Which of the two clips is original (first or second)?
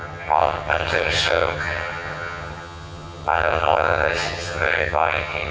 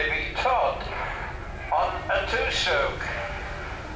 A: second